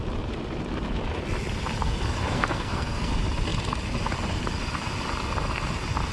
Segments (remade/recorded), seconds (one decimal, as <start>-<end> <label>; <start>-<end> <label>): 0.0-2.3 recorded; 2.3-3.1 remade; 3.1-6.1 recorded